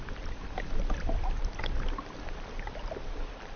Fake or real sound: real